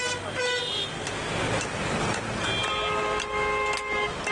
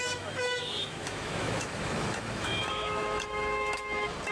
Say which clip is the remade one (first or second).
second